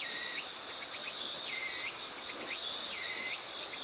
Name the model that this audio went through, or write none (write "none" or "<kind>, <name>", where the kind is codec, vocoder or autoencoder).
none